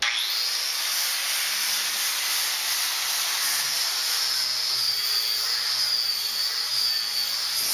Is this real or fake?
real